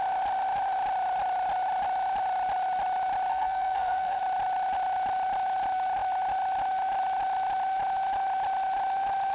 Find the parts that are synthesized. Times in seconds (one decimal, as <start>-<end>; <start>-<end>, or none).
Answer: 3.3-4.2